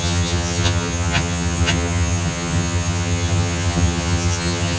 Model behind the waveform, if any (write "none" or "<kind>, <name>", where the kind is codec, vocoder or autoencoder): vocoder, HiFi-GAN